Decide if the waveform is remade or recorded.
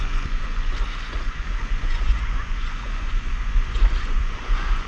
remade